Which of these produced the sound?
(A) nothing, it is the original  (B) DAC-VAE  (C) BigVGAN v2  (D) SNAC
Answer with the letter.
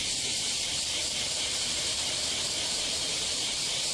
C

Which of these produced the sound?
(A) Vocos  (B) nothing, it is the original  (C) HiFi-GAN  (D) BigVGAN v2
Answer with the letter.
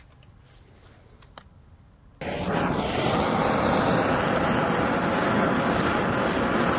B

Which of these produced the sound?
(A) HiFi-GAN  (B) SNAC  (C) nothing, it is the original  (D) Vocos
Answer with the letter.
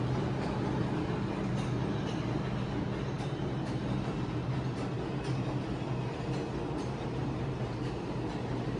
C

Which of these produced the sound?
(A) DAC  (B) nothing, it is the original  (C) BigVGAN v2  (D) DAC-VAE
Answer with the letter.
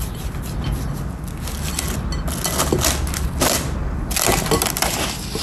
B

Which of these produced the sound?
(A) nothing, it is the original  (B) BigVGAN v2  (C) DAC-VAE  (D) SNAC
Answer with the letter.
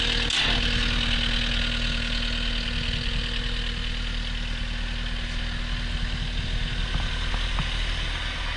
A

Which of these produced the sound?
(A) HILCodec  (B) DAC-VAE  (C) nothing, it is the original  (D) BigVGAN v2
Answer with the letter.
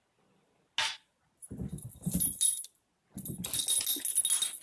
C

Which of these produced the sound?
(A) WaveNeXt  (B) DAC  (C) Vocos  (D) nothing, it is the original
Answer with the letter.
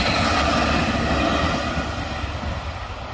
D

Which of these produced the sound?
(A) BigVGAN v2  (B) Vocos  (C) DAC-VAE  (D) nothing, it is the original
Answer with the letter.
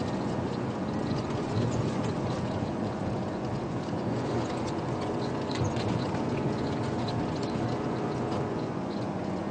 B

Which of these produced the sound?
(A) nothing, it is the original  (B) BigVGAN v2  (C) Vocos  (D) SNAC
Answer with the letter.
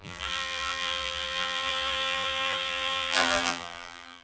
B